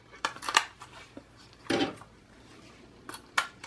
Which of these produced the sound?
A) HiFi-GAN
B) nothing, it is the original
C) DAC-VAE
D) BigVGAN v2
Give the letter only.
D